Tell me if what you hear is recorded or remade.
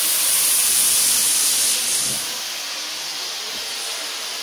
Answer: recorded